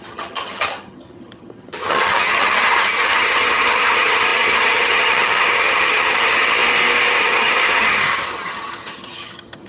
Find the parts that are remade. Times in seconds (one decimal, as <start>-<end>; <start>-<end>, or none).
0.0-6.6; 7.2-9.7